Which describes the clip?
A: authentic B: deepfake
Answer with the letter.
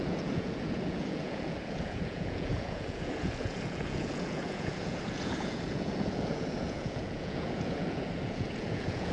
B